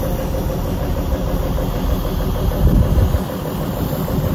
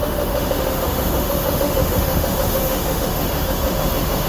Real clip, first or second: first